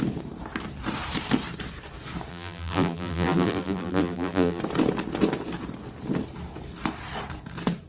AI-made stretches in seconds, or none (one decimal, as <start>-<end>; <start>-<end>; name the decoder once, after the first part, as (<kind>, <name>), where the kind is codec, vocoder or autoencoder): 2.3-4.6 (vocoder, BigVGAN v2)